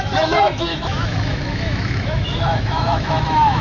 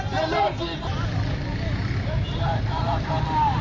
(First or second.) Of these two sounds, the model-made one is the first